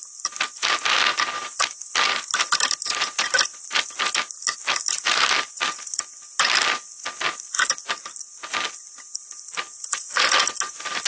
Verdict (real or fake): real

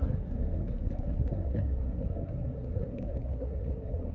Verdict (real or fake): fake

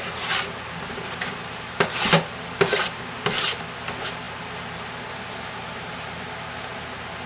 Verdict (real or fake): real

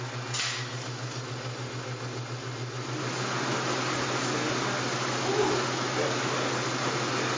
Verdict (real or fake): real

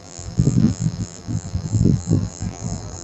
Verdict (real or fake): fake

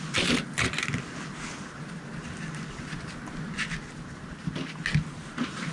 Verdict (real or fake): real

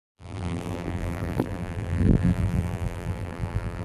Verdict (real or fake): fake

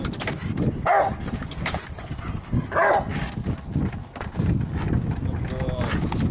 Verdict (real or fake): real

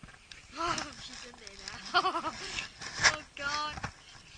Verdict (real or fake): real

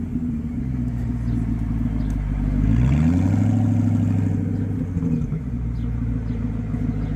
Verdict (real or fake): real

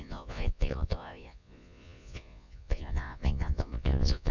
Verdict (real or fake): fake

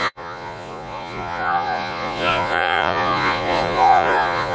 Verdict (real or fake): fake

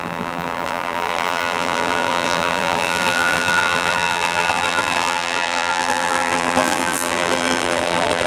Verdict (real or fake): fake